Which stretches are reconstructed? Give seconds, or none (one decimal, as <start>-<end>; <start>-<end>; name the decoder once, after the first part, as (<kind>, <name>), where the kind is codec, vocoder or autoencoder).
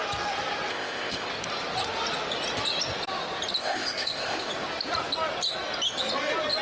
0.7-1.3 (codec, ZipCodec); 3.6-4.5